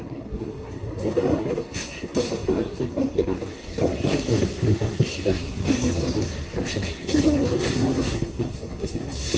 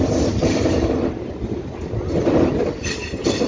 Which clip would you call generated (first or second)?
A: first